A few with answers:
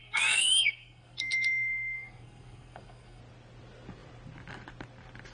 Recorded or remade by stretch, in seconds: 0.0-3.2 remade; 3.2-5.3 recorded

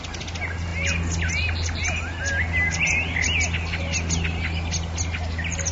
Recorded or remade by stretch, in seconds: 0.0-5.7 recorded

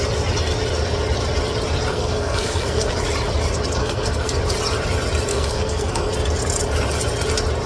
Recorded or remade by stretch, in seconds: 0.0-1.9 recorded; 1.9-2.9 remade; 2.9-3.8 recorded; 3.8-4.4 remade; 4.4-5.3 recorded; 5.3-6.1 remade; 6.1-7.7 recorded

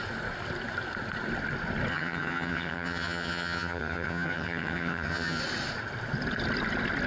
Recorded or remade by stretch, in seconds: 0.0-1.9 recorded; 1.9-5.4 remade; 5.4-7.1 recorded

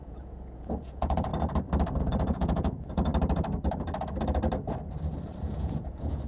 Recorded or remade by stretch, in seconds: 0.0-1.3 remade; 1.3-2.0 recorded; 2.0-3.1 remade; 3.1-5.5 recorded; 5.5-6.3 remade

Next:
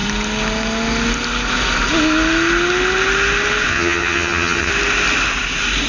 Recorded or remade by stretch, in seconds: 0.0-3.7 recorded; 3.7-4.7 remade; 4.7-5.9 recorded

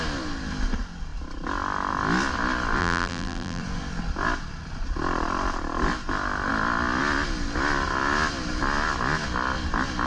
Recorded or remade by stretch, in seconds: 0.0-2.8 recorded; 2.8-3.6 remade; 3.6-10.1 recorded